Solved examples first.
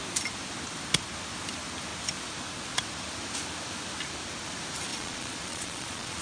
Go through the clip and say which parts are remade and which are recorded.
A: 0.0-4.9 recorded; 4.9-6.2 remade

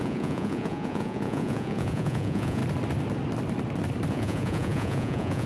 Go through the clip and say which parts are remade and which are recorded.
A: 0.0-2.6 remade; 2.6-4.1 recorded; 4.1-5.5 remade

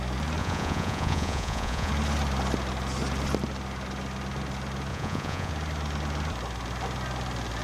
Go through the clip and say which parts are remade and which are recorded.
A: 0.0-0.4 recorded; 0.4-1.9 remade; 1.9-4.9 recorded; 4.9-5.5 remade; 5.5-7.6 recorded

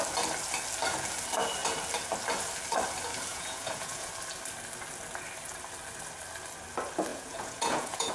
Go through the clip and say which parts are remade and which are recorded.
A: 0.0-3.3 recorded; 3.3-4.1 remade; 4.1-7.1 recorded; 7.1-8.1 remade

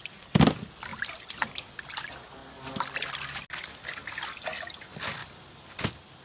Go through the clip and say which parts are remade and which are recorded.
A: 0.0-6.2 recorded

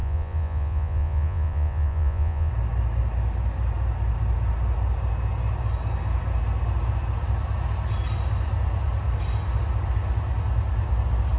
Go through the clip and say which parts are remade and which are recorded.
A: 0.0-2.5 remade; 2.5-11.4 recorded

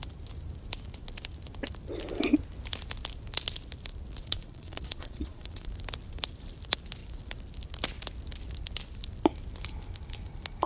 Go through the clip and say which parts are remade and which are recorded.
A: 0.0-4.2 recorded; 4.2-5.7 remade; 5.7-10.7 recorded